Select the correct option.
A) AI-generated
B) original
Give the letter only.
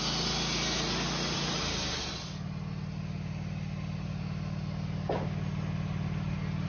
B